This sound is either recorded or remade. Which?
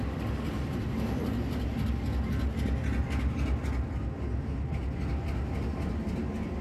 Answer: recorded